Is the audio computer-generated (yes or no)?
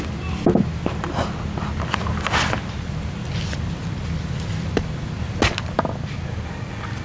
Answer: no